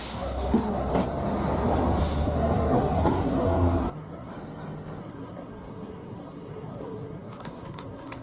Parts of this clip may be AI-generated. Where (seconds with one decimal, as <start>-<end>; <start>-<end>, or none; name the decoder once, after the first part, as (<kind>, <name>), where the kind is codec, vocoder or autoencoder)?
0.0-0.9 (codec, SNAC); 2.0-4.3; 5.0-8.2